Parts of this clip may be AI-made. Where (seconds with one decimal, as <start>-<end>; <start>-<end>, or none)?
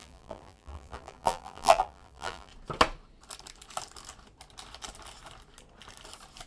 0.0-2.5